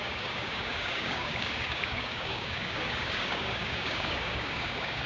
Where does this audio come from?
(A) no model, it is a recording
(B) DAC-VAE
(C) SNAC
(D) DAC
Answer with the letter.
D